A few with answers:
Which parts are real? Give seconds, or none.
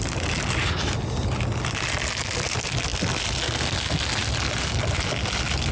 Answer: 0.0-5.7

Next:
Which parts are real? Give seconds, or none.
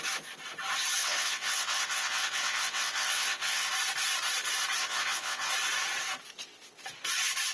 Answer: 0.0-1.0; 3.7-4.8; 5.5-7.5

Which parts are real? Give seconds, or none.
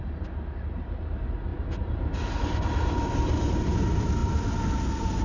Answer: 1.5-2.4